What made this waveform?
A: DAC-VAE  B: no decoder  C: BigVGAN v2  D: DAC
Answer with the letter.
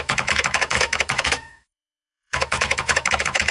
A